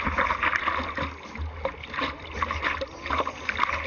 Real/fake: real